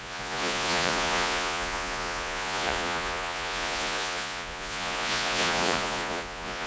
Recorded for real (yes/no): no